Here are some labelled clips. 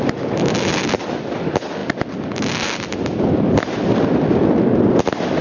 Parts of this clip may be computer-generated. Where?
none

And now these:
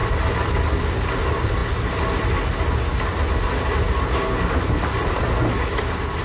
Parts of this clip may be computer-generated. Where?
none

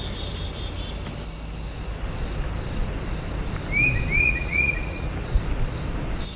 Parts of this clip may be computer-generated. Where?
4.2-5.1 (vocoder, Vocos)